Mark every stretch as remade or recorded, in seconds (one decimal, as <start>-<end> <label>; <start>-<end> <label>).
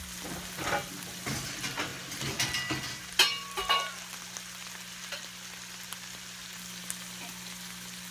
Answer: 0.0-8.1 recorded